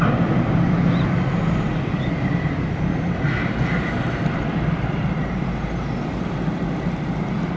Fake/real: real